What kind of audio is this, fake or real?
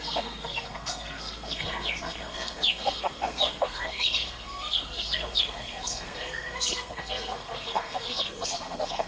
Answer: fake